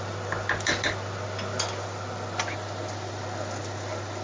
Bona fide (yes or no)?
yes